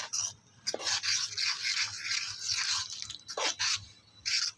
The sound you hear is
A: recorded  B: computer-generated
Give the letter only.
A